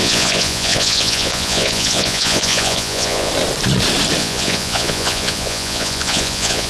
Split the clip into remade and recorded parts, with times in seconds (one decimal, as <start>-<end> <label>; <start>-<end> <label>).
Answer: 0.0-3.3 remade; 3.3-4.2 recorded; 4.2-6.7 remade